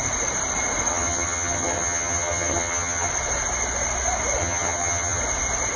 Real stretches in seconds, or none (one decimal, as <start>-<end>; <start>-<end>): 0.0-0.9; 3.1-4.4; 5.2-5.8